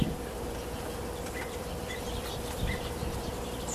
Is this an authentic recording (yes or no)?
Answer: no